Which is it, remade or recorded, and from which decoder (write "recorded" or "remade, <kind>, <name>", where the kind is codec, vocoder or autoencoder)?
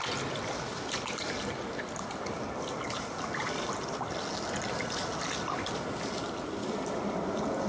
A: recorded